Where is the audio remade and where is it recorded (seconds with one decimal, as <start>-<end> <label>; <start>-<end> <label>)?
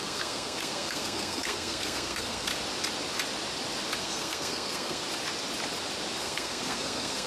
0.0-2.5 remade; 2.5-4.0 recorded; 4.0-5.0 remade; 5.0-6.2 recorded; 6.2-7.3 remade